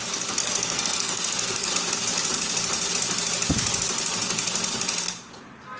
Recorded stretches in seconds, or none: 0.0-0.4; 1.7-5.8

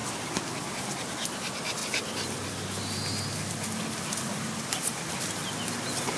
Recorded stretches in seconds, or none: 0.0-6.2

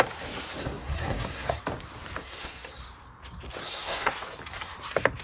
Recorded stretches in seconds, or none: 0.0-0.6; 1.6-2.2; 2.8-3.6; 4.1-5.2

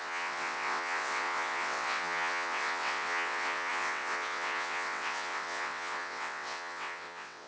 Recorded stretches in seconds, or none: none

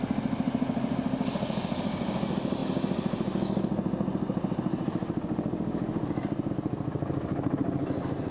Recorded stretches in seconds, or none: 0.0-8.3

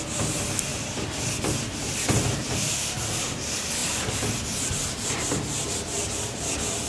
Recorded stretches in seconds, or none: 0.0-6.9